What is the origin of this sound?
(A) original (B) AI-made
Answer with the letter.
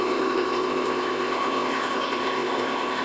B